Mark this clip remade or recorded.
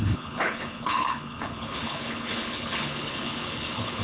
remade